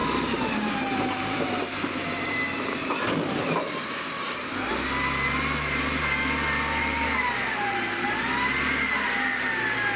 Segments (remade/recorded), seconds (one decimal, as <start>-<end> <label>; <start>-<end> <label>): 0.0-4.7 remade; 4.7-6.8 recorded; 6.8-8.2 remade; 8.2-10.0 recorded